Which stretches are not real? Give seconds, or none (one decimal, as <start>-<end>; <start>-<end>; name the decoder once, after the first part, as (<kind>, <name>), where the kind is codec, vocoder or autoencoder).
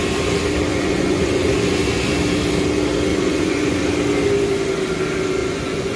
0.7-1.6 (vocoder, Vocos); 3.1-3.8; 5.4-6.0